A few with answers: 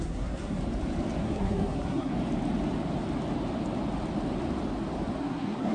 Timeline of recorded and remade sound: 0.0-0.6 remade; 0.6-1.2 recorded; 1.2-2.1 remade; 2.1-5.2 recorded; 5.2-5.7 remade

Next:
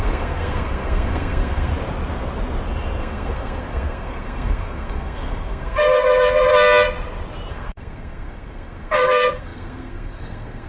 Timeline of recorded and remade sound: 0.0-1.7 remade; 1.7-3.0 recorded; 3.0-6.5 remade; 6.5-7.5 recorded; 7.5-10.7 remade

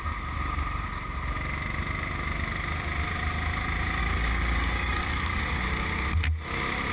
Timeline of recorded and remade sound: 0.0-4.0 recorded; 4.0-5.6 remade; 5.6-6.9 recorded